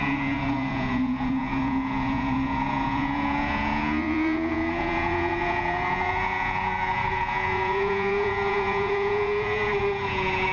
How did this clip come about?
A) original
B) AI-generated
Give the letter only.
B